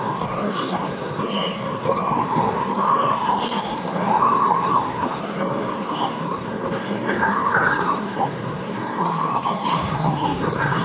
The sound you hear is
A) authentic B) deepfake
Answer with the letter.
B